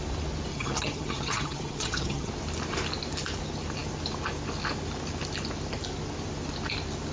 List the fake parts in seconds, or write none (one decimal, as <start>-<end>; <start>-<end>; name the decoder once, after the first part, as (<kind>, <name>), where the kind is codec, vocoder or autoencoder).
0.5-2.3 (vocoder, HiFi-GAN)